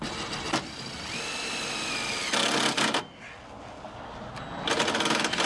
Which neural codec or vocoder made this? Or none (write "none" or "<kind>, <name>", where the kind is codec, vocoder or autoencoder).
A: none